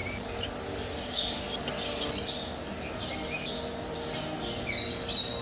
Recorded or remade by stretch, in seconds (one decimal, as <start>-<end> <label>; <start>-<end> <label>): 0.0-5.4 recorded